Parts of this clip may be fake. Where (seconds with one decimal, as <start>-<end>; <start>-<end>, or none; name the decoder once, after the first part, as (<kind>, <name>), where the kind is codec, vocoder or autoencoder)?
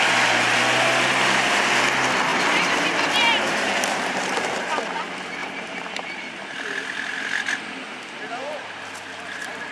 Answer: 2.3-5.0 (vocoder, BigVGAN v2); 5.4-6.4